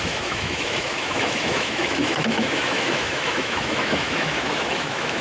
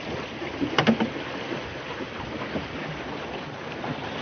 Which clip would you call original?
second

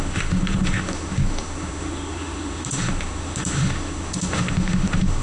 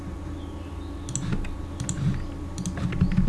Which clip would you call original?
second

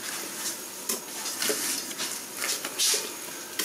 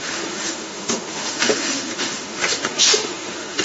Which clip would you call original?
first